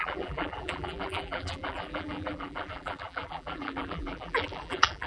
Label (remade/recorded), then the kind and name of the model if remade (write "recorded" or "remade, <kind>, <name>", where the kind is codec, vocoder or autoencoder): remade, vocoder, BigVGAN v2